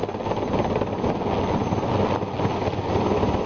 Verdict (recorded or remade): recorded